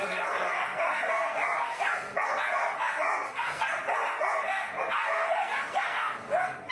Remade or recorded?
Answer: remade